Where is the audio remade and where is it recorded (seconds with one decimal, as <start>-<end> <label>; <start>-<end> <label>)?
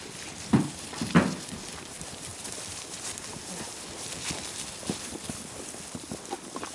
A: 0.0-6.7 recorded